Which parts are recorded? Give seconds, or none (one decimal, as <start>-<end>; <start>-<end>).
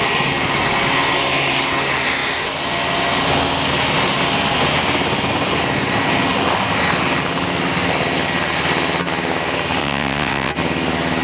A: 0.0-9.8; 10.5-11.2